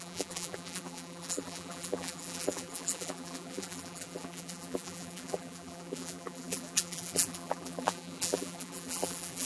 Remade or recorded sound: remade